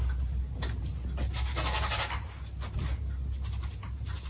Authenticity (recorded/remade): recorded